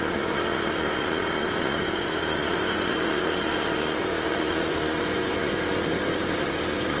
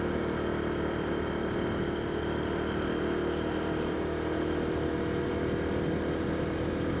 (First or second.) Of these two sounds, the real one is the second